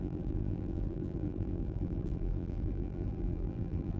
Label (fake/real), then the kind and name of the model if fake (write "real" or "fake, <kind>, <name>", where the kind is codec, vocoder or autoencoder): fake, vocoder, BigVGAN v2